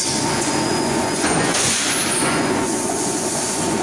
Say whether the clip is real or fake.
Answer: fake